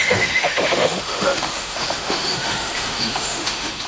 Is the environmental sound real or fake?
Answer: fake